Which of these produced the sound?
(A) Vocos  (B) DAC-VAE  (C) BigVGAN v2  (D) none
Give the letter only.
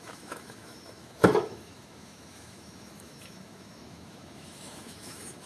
B